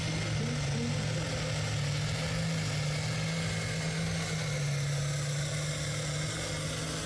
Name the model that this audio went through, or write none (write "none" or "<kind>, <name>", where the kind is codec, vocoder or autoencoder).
none